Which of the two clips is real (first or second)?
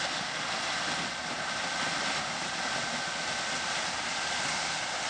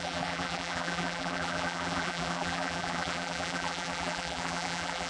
first